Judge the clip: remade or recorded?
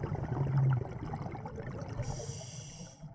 recorded